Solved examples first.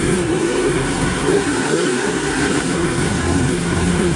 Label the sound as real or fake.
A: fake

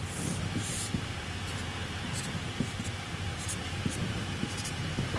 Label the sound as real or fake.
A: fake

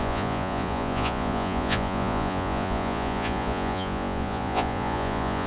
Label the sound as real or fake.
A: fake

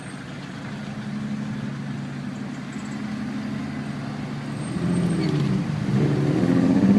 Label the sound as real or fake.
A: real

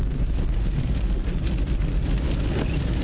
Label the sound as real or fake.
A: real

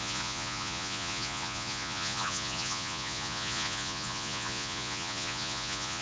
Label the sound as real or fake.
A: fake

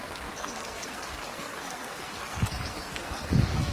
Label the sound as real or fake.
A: fake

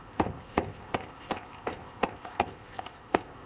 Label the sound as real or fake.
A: fake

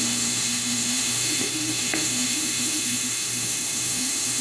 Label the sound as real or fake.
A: fake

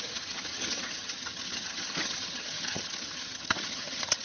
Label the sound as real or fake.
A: fake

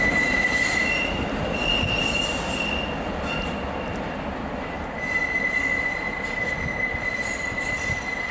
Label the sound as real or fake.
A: real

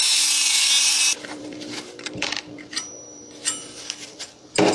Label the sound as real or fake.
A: fake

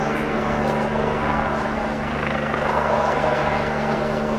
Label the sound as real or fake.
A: fake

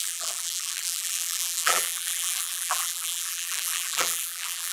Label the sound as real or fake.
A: fake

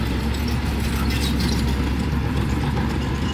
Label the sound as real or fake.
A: real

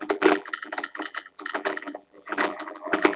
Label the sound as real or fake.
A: fake